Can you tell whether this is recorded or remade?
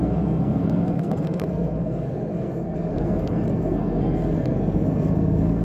remade